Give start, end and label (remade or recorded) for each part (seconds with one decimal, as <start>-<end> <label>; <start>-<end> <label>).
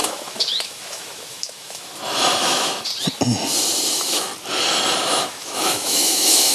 0.0-1.9 remade; 1.9-2.4 recorded; 2.4-2.9 remade; 2.9-3.9 recorded; 3.9-4.3 remade; 4.3-5.0 recorded; 5.0-6.5 remade